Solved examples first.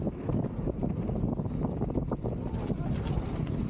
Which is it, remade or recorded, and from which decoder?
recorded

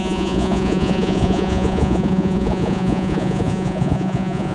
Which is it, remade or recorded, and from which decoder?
remade, vocoder, Vocos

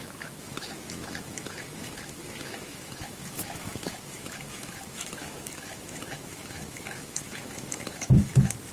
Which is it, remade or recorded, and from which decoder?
remade, autoencoder, DAC-VAE